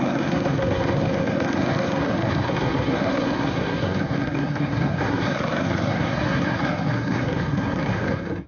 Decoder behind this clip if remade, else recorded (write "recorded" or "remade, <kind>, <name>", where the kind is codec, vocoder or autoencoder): remade, codec, SNAC